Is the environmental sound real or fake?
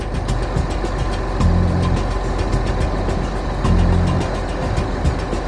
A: real